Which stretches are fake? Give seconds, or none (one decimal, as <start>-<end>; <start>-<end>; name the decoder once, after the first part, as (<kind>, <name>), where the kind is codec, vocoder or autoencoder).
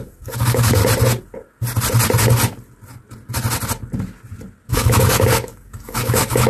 0.0-0.8 (codec, DAC); 4.7-6.5